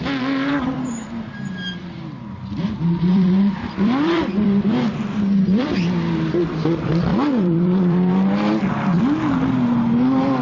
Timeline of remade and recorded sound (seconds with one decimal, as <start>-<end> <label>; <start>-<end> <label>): 0.0-0.5 recorded; 0.5-1.2 remade; 1.2-3.1 recorded; 3.1-5.7 remade; 5.7-7.1 recorded; 7.1-9.0 remade; 9.0-10.4 recorded